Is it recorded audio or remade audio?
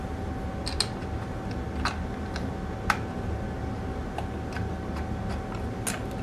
recorded